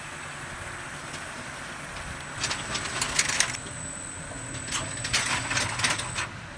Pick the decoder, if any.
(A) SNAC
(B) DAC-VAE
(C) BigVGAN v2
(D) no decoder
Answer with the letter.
D